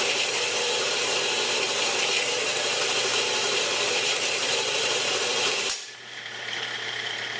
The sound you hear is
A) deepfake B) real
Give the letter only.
A